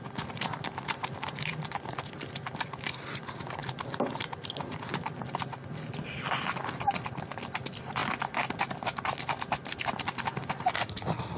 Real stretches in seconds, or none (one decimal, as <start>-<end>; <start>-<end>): 3.6-6.7; 8.0-10.7